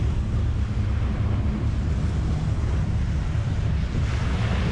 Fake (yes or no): no